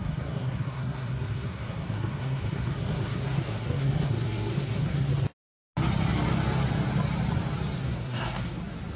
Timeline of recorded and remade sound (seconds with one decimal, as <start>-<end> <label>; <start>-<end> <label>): 0.0-5.1 remade; 5.1-7.8 recorded; 7.8-8.6 remade; 8.6-9.0 recorded